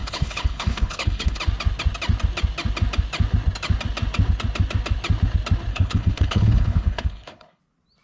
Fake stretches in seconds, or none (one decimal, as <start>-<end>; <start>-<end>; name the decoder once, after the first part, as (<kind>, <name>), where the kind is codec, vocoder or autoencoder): 0.0-1.4 (codec, HILCodec); 5.7-7.6